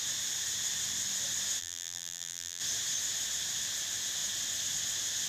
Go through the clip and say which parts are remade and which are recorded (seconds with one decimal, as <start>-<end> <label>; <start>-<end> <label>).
0.0-1.6 recorded; 1.6-2.6 remade; 2.6-5.3 recorded